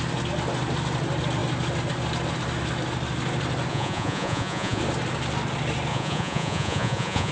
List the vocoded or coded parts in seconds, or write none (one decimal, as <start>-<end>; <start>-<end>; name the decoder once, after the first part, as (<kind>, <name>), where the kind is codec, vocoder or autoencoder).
3.7-4.8 (vocoder, Vocos); 5.9-7.3